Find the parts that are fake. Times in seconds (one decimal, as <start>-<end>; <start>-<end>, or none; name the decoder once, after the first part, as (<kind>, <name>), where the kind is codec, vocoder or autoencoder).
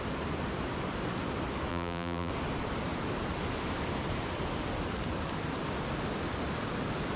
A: 1.7-2.3 (vocoder, BigVGAN v2)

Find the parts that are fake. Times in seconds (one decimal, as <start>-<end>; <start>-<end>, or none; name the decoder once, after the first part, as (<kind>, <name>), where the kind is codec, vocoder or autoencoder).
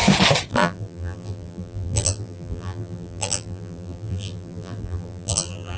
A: 0.5-5.8 (vocoder, BigVGAN v2)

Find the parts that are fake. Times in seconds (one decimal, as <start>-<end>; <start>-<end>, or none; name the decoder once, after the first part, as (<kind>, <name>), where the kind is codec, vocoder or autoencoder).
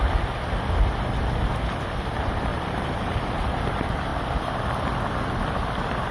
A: 2.5-3.6 (vocoder, BigVGAN v2)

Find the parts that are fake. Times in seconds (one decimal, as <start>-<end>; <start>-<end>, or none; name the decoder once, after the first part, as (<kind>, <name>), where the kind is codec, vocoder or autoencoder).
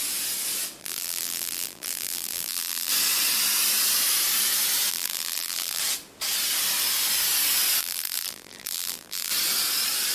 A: 0.8-2.9 (vocoder, BigVGAN v2); 4.9-5.8; 7.8-9.3